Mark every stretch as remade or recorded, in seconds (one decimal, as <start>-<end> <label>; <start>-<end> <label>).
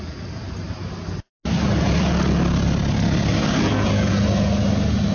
0.0-3.7 recorded; 3.7-4.2 remade; 4.2-5.1 recorded